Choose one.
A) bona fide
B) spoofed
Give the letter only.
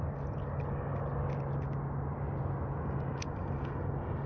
A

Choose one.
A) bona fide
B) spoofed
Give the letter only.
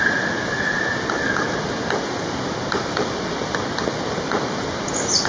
A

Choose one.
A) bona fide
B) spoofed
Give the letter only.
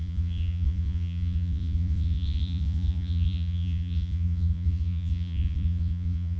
B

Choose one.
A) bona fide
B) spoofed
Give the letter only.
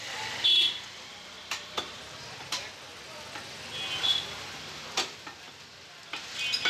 A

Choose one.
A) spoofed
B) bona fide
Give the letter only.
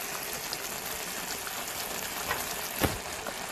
B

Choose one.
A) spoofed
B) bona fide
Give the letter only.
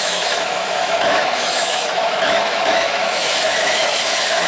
A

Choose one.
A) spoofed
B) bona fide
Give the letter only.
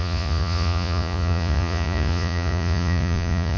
A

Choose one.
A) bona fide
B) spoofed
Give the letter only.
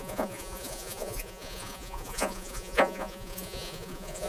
B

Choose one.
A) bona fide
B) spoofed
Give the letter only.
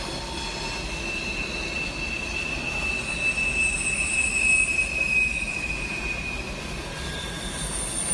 A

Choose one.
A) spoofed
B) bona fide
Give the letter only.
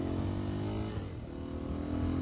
B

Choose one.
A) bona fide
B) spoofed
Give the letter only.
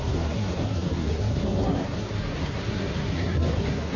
B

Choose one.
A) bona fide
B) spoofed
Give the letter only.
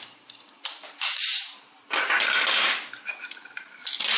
A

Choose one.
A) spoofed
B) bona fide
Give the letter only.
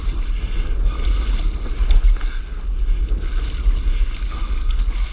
B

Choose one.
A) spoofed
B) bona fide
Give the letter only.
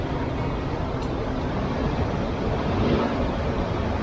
B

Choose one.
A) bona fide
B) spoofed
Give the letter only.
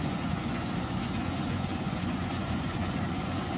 B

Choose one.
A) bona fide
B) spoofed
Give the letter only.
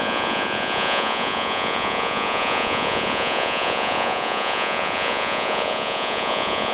B